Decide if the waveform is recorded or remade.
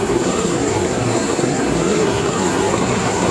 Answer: remade